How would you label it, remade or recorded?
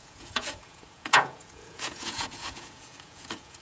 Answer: remade